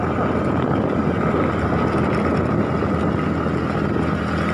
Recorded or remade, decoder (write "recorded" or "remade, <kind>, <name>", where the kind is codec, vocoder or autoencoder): recorded